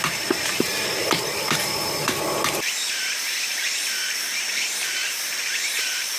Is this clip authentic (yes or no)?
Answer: no